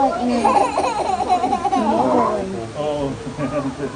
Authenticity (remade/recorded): recorded